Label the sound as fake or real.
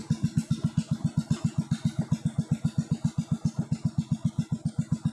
real